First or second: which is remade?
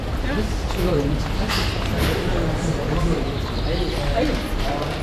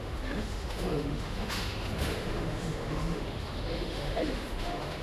second